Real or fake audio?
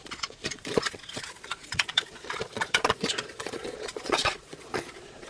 fake